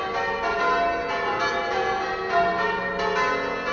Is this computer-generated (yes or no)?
no